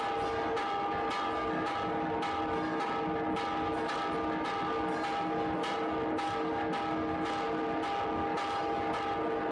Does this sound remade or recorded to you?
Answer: recorded